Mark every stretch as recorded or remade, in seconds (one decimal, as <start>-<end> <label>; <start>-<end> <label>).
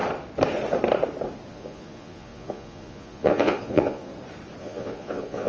0.0-1.5 recorded; 1.5-4.1 remade; 4.1-4.6 recorded; 4.6-5.5 remade